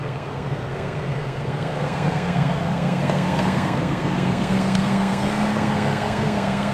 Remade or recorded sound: remade